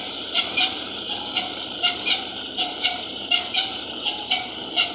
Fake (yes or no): yes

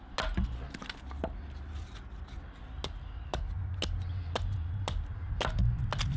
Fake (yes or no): no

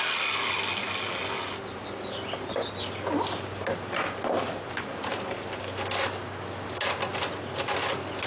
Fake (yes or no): no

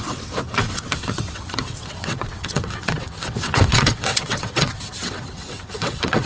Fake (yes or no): yes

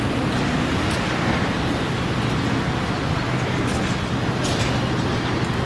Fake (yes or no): no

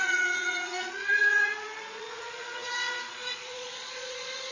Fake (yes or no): yes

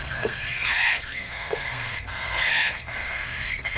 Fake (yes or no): yes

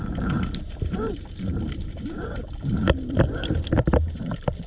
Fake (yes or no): yes